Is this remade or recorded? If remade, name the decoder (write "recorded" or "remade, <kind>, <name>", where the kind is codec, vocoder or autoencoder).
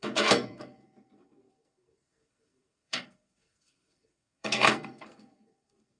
remade, codec, SNAC